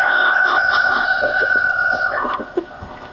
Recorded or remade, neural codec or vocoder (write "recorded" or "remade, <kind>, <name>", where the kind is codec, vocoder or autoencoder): remade, codec, ZipCodec